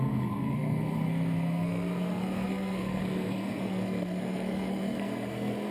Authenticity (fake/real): fake